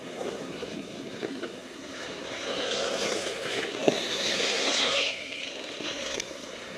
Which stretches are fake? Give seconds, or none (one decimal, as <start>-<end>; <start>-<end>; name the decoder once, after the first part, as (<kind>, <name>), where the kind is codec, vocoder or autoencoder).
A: 0.0-6.8 (codec, SNAC)